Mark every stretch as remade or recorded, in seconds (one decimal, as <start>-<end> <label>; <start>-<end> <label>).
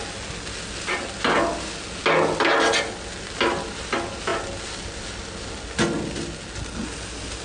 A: 0.0-7.4 recorded